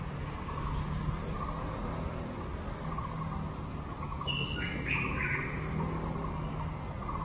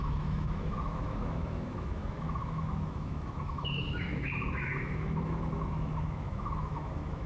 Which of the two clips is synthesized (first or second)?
second